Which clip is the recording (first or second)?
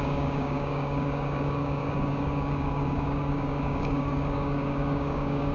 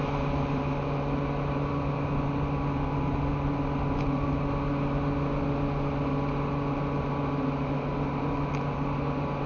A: second